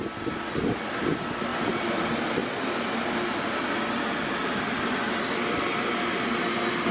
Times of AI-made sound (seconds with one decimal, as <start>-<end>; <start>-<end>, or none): none